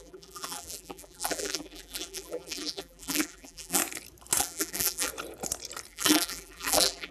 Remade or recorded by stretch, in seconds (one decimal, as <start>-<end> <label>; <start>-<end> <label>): 0.0-3.8 remade; 3.8-4.4 recorded; 4.4-5.1 remade; 5.1-5.9 recorded; 5.9-7.1 remade